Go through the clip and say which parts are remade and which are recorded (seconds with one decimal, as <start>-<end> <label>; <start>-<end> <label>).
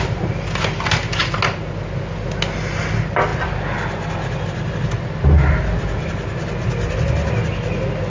0.0-8.1 recorded